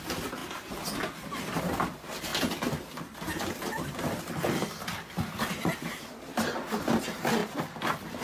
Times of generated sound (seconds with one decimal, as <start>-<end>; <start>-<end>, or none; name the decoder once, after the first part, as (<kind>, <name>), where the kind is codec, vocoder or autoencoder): none